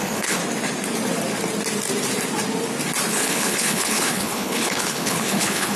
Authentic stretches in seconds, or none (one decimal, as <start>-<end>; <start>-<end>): 0.4-3.1

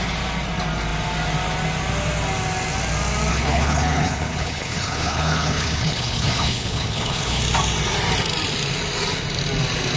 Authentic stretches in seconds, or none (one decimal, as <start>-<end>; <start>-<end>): 0.0-3.3; 7.4-10.0

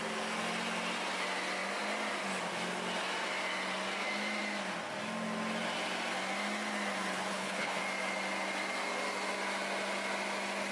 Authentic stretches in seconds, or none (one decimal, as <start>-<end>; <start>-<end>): 0.0-7.3; 7.8-10.7

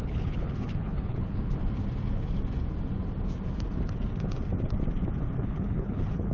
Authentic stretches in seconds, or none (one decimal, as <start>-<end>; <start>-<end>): 1.6-5.4

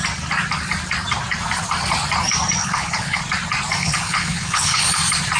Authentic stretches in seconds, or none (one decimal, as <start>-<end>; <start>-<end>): 0.0-2.6; 3.2-3.8; 5.0-5.4